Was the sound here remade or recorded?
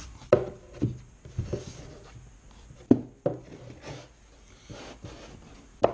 recorded